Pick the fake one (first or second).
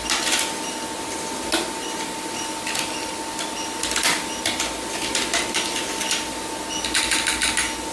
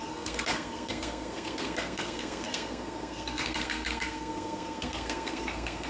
second